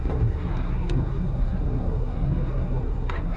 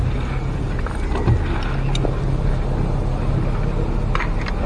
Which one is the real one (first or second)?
second